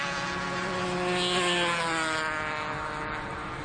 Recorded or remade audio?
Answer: recorded